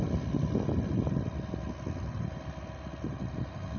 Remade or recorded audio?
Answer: recorded